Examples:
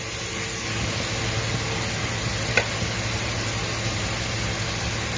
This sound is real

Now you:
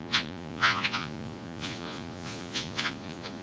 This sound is fake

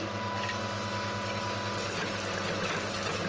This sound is real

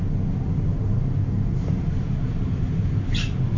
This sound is real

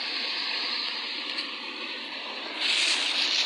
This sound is real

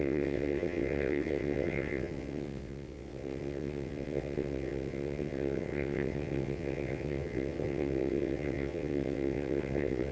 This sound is fake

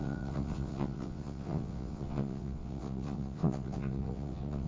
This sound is fake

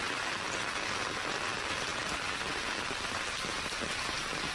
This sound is real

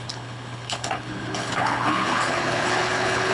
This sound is fake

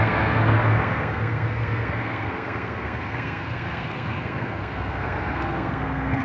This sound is fake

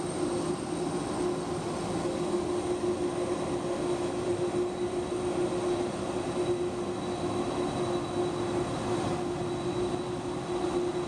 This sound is real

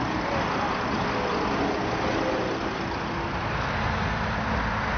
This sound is real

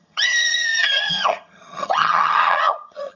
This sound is fake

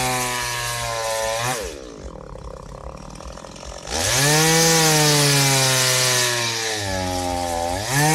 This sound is real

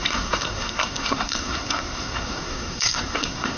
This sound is fake